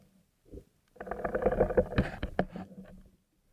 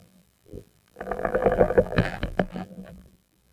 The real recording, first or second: first